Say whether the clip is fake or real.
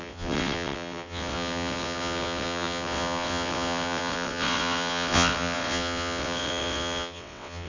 fake